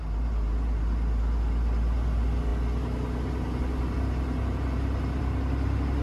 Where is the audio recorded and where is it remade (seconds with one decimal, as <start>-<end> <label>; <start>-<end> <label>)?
0.0-6.0 recorded